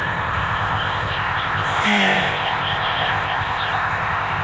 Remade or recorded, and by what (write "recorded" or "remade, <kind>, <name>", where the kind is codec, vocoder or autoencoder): remade, codec, ZipCodec